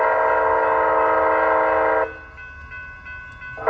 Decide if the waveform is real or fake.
real